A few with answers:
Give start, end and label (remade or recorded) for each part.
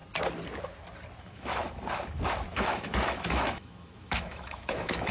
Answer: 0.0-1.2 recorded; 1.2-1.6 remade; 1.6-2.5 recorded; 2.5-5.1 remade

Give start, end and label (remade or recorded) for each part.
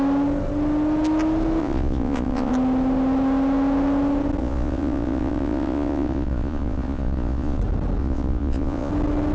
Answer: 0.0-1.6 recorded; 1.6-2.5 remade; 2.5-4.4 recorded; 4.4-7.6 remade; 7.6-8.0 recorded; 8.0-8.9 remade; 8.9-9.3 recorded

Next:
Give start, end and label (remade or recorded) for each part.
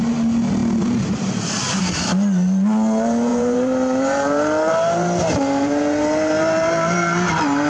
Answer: 0.0-3.3 recorded; 3.3-7.7 remade